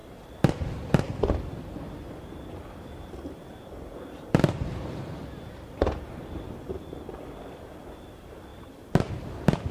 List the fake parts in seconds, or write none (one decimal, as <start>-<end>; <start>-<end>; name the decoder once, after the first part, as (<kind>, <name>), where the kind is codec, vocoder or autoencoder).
3.9-6.4 (vocoder, BigVGAN v2); 8.5-9.1